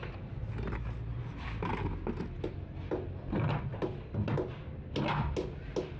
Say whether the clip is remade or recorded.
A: recorded